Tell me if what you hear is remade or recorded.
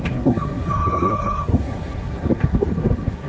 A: remade